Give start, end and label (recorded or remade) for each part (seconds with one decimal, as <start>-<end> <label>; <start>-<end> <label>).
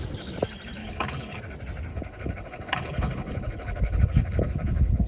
0.0-0.8 recorded; 0.8-1.4 remade; 1.4-1.9 recorded; 1.9-5.1 remade